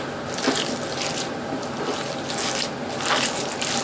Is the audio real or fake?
real